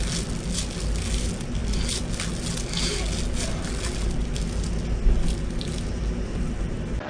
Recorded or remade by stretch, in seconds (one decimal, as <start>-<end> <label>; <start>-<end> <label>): 0.0-7.1 recorded